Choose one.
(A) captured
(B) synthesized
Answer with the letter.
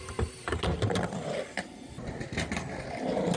A